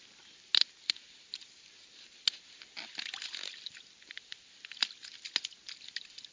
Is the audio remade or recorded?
recorded